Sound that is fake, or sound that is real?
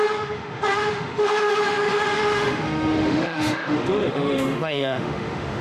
fake